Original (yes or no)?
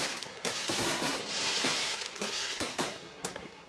no